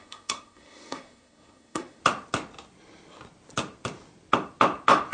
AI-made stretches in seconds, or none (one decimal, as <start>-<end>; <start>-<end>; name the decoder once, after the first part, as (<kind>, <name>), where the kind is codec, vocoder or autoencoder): 0.0-2.0 (codec, SNAC)